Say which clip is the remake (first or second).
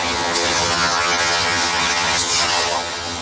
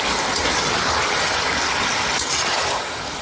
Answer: first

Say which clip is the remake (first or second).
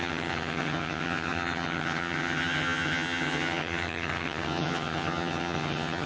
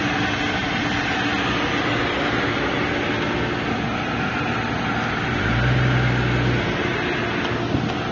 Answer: first